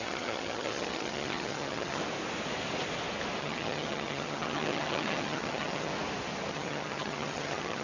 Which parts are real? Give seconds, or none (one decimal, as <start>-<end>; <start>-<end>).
2.0-3.4; 5.9-6.5